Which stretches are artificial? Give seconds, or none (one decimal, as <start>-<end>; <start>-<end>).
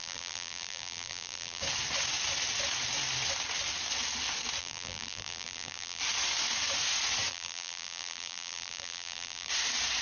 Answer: 0.0-1.6; 4.6-6.0; 7.3-9.5